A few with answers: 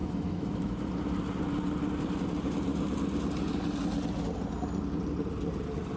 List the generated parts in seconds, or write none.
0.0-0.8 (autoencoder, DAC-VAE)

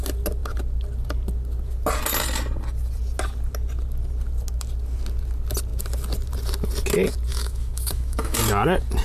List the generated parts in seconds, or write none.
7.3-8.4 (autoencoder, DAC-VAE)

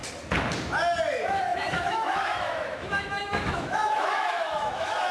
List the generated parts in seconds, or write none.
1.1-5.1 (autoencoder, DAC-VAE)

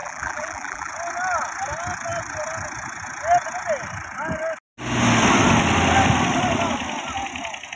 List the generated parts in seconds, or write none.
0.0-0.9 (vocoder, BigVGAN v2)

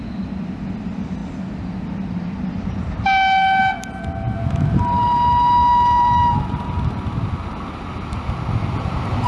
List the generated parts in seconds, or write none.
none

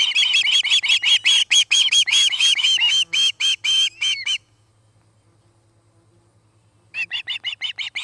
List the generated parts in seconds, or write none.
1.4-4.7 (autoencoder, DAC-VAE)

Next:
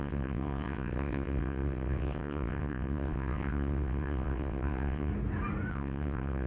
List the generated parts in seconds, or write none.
0.0-5.1 (vocoder, WaveNeXt); 5.7-6.5

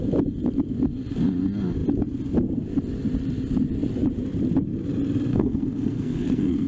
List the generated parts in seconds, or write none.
5.3-6.7 (codec, SNAC)